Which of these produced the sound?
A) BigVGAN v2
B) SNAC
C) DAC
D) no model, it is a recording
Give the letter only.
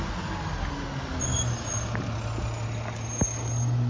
D